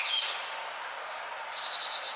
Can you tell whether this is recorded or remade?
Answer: recorded